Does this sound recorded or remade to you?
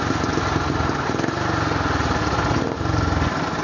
recorded